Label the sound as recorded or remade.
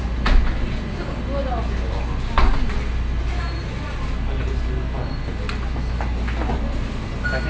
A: recorded